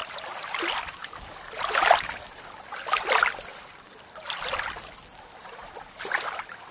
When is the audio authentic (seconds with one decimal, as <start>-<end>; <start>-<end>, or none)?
0.0-6.7